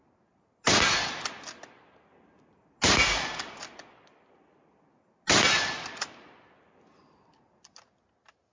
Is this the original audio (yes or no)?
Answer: yes